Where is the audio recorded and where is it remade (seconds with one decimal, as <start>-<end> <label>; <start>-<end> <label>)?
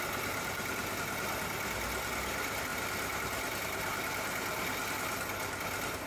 0.0-6.1 recorded